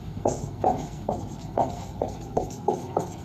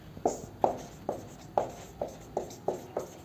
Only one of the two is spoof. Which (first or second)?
first